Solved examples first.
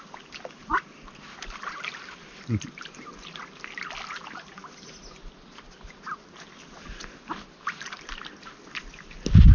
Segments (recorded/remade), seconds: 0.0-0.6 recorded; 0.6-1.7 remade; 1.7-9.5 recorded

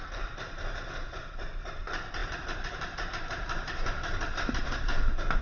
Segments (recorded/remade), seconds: 0.0-2.2 recorded; 2.2-5.0 remade; 5.0-5.4 recorded

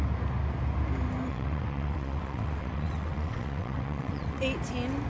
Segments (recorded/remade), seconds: 0.0-1.3 recorded; 1.3-4.4 remade; 4.4-5.1 recorded

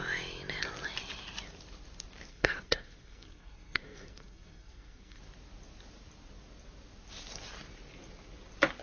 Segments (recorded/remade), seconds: 0.0-2.3 recorded; 2.3-5.2 remade; 5.2-8.8 recorded

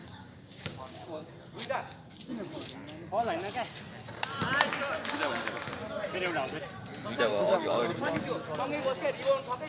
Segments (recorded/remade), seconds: 0.0-1.3 remade; 1.3-7.3 recorded; 7.3-8.2 remade; 8.2-9.7 recorded

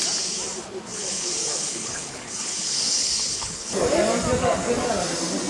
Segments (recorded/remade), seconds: 0.0-0.9 recorded; 0.9-3.7 remade; 3.7-5.5 recorded

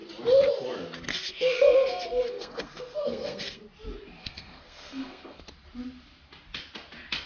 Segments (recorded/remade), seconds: 0.0-1.1 recorded; 1.1-3.6 remade; 3.6-4.2 recorded; 4.2-5.4 remade; 5.4-7.3 recorded